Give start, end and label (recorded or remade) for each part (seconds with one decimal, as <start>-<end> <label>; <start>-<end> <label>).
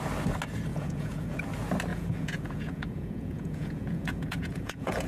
0.0-0.7 recorded; 0.7-1.4 remade; 1.4-1.9 recorded; 1.9-5.1 remade